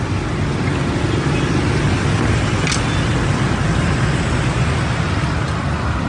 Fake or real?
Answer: real